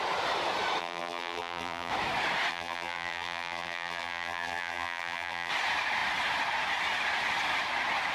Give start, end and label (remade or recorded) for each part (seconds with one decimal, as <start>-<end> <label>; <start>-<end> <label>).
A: 0.0-0.8 recorded; 0.8-1.9 remade; 1.9-2.5 recorded; 2.5-5.5 remade; 5.5-8.1 recorded